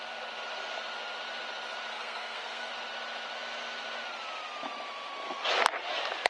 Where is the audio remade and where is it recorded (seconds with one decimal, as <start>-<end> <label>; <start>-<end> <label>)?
0.0-1.9 recorded; 1.9-2.7 remade; 2.7-6.3 recorded